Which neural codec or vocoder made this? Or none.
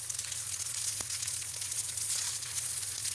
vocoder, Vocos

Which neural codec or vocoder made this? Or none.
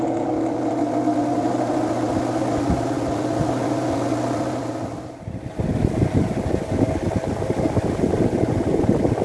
none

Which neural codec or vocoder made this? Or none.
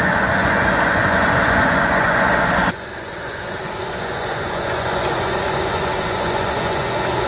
vocoder, Vocos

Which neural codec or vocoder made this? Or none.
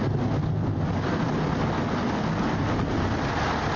none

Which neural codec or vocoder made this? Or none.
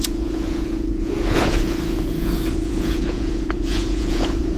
vocoder, Vocos